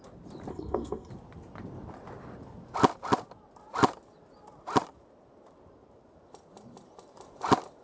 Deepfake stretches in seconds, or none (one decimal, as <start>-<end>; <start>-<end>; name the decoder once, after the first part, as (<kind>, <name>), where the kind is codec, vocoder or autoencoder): 0.5-1.1 (codec, SNAC)